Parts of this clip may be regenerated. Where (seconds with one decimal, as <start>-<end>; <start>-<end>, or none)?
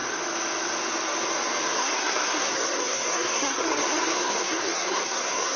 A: 1.8-5.6